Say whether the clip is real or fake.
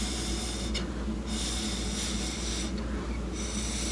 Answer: real